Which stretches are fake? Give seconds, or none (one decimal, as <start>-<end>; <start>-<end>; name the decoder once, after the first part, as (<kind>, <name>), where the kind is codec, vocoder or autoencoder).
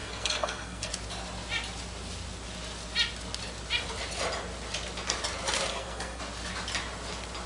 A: 0.0-0.9 (codec, SNAC); 5.7-6.2